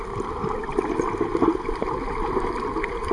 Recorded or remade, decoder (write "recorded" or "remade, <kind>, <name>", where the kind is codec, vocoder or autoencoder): recorded